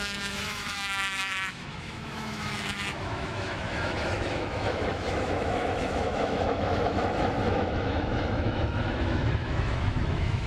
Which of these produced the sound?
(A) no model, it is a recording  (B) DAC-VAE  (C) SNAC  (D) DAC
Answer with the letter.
B